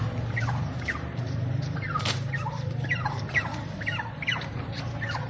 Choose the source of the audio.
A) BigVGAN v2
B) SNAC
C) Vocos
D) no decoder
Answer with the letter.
A